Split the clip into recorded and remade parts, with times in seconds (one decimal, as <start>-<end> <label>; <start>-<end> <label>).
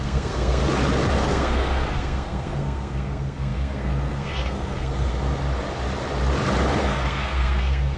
0.0-0.6 remade; 0.6-1.2 recorded; 1.2-5.1 remade; 5.1-6.8 recorded; 6.8-8.0 remade